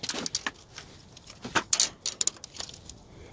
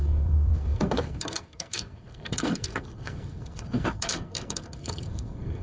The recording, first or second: first